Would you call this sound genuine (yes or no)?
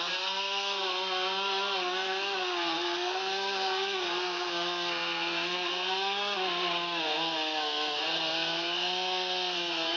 no